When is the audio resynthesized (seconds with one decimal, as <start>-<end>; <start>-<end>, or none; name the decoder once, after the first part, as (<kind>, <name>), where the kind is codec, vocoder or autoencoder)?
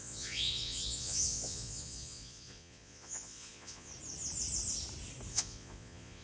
0.0-3.9 (vocoder, Vocos); 5.3-6.2